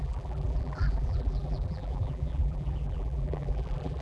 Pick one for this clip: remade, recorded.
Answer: remade